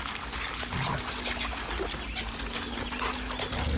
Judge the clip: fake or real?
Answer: real